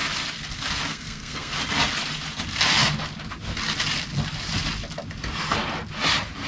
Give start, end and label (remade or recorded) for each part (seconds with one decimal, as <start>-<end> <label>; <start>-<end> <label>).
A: 0.0-0.9 recorded; 0.9-1.5 remade; 1.5-6.5 recorded